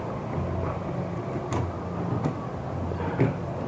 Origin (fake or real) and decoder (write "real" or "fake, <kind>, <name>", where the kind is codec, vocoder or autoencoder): real